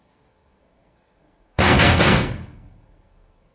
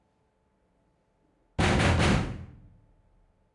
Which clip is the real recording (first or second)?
second